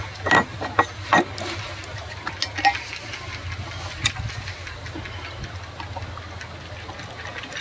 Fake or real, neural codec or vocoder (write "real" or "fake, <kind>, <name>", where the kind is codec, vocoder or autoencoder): real